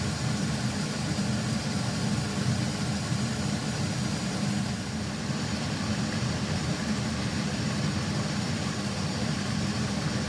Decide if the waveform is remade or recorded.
recorded